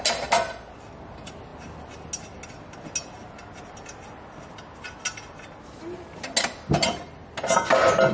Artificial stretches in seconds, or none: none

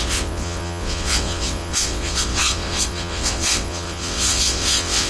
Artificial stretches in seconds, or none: 0.0-5.1 (vocoder, WaveNeXt)

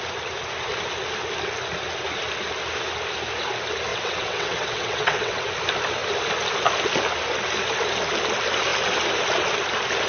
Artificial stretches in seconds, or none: 3.9-5.5 (vocoder, WaveNeXt)

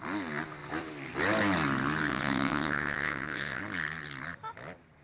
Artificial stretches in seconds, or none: 2.1-3.6 (vocoder, WaveNeXt)

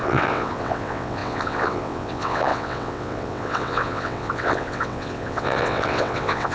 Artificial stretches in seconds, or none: 0.0-6.5 (vocoder, WaveNeXt)